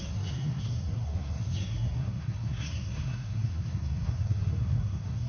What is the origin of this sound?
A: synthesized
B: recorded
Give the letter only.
A